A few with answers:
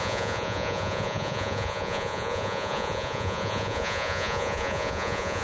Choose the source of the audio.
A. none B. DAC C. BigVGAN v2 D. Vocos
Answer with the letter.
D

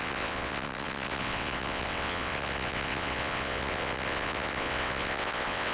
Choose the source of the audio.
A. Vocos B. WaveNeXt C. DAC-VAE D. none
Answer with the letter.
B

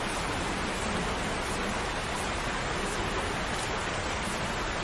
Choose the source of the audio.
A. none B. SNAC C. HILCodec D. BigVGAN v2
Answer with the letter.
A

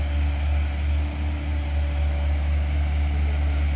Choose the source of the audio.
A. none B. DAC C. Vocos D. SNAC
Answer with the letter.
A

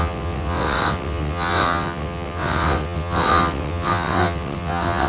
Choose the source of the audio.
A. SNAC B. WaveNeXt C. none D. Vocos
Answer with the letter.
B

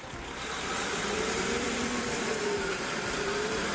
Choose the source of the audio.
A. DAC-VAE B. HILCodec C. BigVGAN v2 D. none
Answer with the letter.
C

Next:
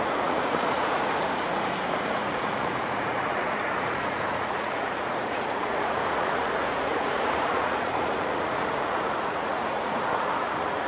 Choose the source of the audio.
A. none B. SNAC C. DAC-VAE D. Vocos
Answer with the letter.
D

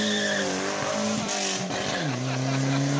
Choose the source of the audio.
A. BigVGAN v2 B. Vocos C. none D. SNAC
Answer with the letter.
C